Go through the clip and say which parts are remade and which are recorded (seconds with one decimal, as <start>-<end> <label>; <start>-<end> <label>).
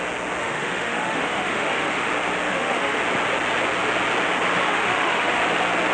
0.0-0.4 recorded; 0.4-2.1 remade; 2.1-2.5 recorded; 2.5-3.0 remade; 3.0-4.7 recorded; 4.7-5.4 remade; 5.4-5.9 recorded